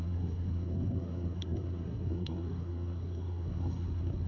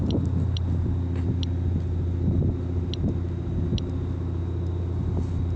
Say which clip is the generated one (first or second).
first